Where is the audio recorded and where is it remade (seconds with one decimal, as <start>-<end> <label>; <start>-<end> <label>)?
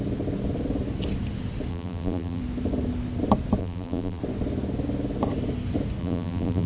0.0-1.7 recorded; 1.7-2.4 remade; 2.4-3.6 recorded; 3.6-4.2 remade; 4.2-6.0 recorded; 6.0-6.7 remade